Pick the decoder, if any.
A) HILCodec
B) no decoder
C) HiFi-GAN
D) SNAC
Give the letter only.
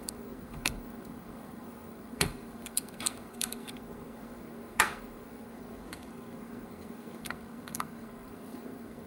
D